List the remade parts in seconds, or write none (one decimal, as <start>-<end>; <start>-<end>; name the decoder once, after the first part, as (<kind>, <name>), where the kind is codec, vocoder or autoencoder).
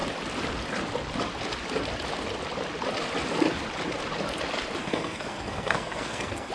4.8-6.5 (codec, SNAC)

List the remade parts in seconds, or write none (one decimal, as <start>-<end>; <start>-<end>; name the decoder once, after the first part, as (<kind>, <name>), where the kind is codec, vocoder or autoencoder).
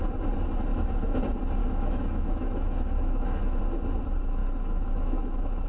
0.7-1.2 (autoencoder, DAC-VAE); 1.6-3.6; 4.4-5.7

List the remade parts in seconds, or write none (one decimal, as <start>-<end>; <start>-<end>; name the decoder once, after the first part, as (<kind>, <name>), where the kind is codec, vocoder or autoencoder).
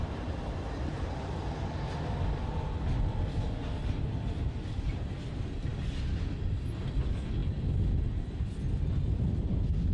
none